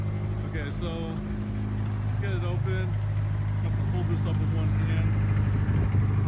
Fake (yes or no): no